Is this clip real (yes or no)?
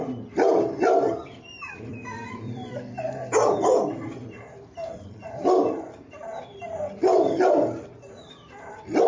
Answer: no